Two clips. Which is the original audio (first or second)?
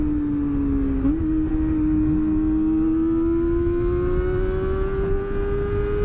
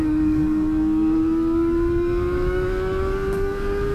first